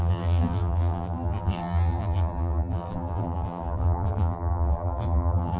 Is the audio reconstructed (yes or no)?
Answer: yes